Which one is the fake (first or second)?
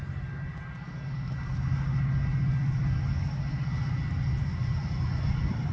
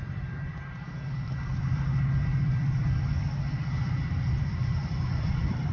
second